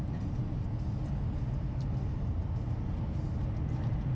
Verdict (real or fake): real